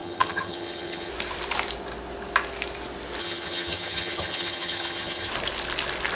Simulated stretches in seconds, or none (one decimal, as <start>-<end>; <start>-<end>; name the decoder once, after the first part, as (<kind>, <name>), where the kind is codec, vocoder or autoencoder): 0.0-1.1 (vocoder, HiFi-GAN); 3.2-5.3

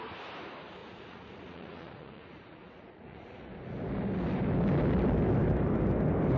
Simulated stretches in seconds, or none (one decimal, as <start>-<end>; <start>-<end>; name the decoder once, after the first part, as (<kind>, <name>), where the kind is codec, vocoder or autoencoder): 0.8-3.5 (vocoder, Vocos)

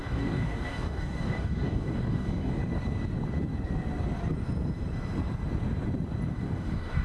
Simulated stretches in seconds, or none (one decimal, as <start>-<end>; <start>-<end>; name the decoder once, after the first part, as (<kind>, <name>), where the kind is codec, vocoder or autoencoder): 0.0-2.6 (codec, DAC); 6.3-7.0

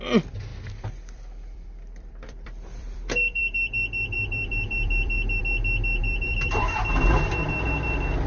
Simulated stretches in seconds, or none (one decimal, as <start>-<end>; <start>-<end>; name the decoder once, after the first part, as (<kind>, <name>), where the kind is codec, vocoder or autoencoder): 0.5-5.4 (vocoder, BigVGAN v2); 6.0-7.2

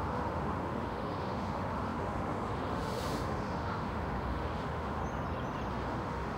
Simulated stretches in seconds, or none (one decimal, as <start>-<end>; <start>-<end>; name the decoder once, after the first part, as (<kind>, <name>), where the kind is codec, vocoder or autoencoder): 0.0-5.0 (autoencoder, DAC-VAE); 5.7-6.4

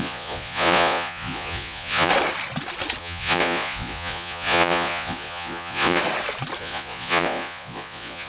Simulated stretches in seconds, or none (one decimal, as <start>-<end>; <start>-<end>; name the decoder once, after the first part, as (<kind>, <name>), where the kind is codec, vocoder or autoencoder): 0.0-2.1 (vocoder, Vocos); 3.0-6.0; 6.6-8.3

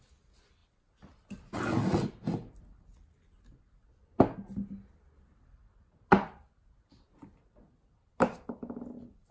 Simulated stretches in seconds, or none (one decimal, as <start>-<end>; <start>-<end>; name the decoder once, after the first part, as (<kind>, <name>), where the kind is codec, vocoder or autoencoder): none